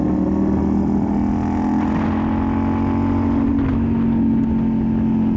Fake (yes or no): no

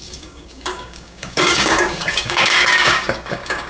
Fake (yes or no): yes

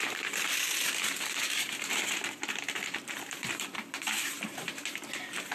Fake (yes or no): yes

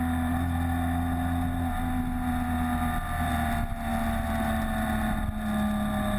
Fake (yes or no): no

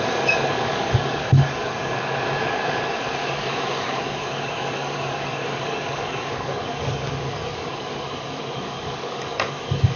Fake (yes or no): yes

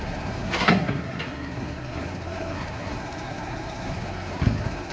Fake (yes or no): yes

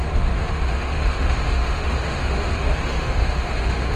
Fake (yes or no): yes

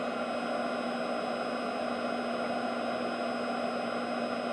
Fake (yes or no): no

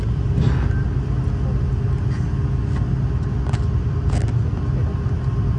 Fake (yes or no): no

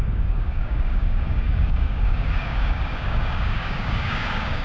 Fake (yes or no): yes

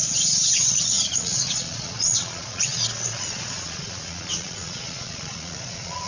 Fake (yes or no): yes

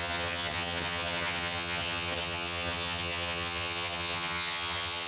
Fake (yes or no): yes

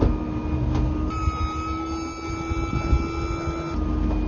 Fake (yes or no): no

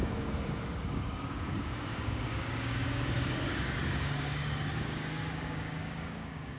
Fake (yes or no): yes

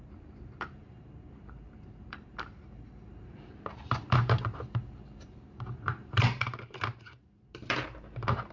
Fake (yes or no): yes